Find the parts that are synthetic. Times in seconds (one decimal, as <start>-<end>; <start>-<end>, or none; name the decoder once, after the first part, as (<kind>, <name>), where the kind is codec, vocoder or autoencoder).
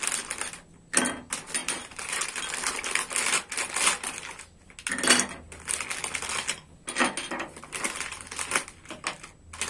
1.6-2.4 (vocoder, BigVGAN v2)